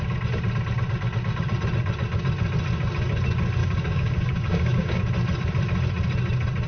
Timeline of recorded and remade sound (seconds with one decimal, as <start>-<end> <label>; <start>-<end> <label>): 0.0-3.6 recorded; 3.6-5.0 remade; 5.0-6.7 recorded